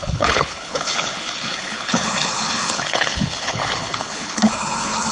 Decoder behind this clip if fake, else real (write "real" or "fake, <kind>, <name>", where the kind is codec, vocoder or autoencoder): fake, codec, HILCodec